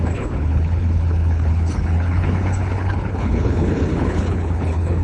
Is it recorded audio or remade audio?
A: remade